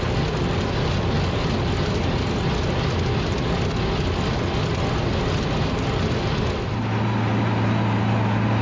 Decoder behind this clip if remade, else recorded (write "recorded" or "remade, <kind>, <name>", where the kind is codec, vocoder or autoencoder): recorded